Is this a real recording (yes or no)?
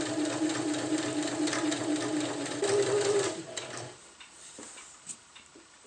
yes